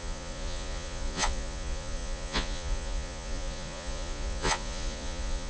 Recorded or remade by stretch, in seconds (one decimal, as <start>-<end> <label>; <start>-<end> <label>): 0.0-5.5 remade